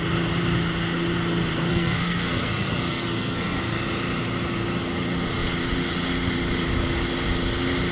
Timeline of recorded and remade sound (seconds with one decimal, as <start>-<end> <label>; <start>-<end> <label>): 0.0-1.7 recorded; 1.7-3.6 remade; 3.6-7.9 recorded